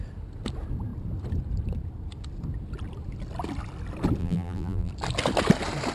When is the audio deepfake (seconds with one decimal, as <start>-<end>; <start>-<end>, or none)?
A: 4.2-4.9